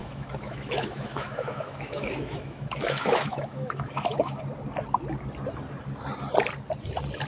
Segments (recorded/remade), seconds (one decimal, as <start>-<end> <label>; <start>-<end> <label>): 0.0-4.4 remade; 4.4-7.3 recorded